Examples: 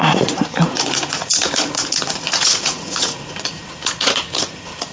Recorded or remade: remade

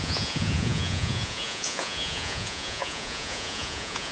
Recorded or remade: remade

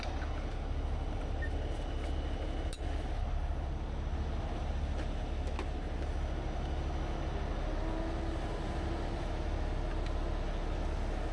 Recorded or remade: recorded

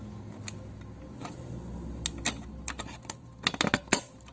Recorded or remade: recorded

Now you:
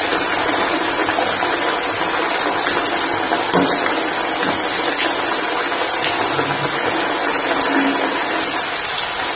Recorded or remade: recorded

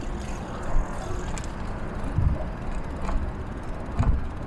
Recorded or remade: recorded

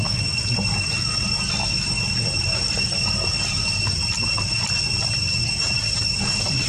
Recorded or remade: recorded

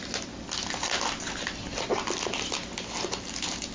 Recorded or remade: recorded